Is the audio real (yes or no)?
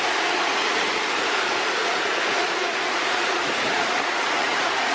no